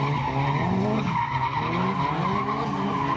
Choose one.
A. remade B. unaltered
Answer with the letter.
B